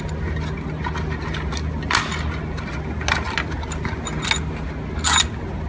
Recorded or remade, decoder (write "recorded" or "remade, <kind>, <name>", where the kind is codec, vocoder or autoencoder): recorded